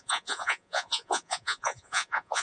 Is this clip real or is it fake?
fake